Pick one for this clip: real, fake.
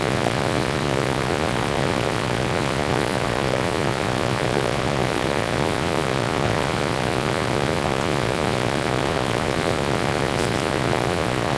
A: fake